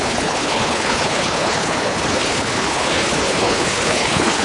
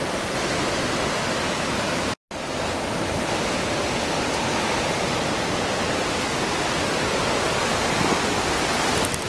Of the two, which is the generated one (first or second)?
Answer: first